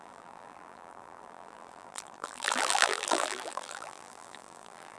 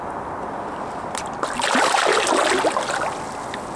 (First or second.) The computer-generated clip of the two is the first